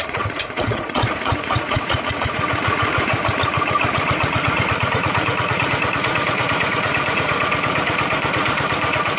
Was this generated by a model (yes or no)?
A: yes